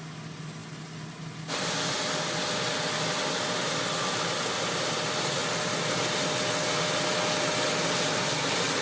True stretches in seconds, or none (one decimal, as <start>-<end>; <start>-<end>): 0.0-8.8